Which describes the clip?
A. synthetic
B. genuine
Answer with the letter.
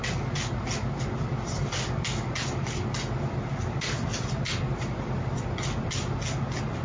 B